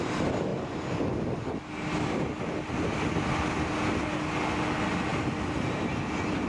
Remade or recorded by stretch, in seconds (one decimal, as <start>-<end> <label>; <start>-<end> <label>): 0.0-6.5 recorded